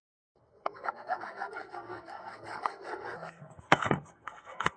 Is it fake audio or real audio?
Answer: fake